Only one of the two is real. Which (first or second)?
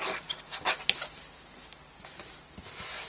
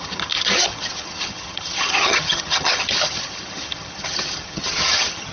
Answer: first